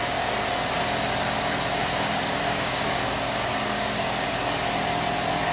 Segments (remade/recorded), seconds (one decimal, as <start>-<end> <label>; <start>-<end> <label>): 0.0-1.8 recorded; 1.8-4.3 remade; 4.3-5.5 recorded